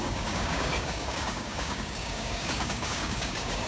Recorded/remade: remade